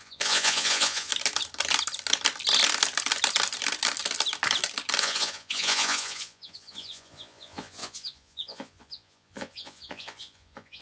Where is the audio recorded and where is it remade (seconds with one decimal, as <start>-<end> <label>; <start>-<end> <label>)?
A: 0.0-1.1 remade; 1.1-5.0 recorded; 5.0-10.8 remade